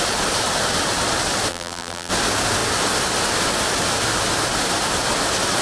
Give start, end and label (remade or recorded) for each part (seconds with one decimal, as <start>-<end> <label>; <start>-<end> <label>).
0.0-1.5 recorded; 1.5-2.1 remade; 2.1-5.6 recorded